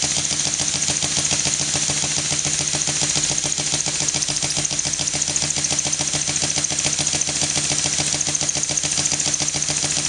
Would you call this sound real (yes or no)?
yes